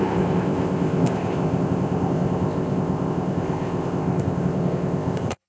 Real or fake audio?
fake